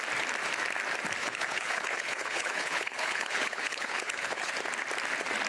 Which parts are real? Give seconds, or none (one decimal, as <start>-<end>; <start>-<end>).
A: 0.0-1.2; 4.5-5.5